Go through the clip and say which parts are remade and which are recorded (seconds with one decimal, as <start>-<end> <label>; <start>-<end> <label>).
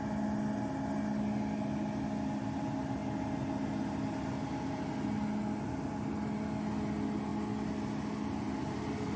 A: 0.0-9.2 recorded